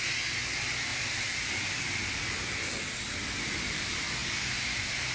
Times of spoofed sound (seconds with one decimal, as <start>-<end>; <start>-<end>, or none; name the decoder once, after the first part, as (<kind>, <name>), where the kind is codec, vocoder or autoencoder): 0.9-1.5 (vocoder, BigVGAN v2); 2.0-2.8